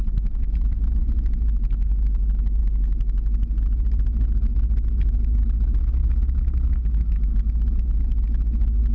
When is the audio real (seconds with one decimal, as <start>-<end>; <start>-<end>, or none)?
0.0-8.9